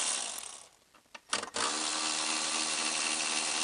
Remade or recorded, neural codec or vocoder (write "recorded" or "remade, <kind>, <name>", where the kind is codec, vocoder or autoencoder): recorded